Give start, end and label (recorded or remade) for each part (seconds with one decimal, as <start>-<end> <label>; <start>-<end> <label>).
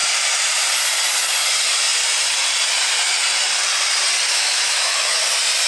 0.0-4.3 recorded; 4.3-5.2 remade; 5.2-5.7 recorded